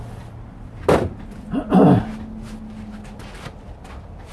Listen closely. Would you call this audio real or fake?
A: real